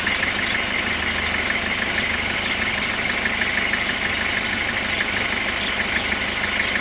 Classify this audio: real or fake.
real